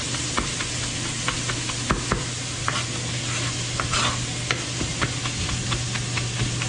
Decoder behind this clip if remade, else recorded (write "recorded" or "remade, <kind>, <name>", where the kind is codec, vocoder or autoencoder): recorded